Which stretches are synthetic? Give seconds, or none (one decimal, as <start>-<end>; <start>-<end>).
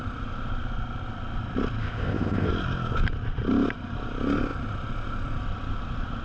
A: 1.8-2.5